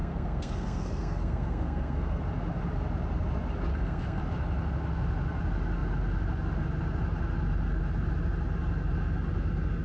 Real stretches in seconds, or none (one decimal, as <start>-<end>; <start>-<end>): 2.2-3.7; 4.2-9.8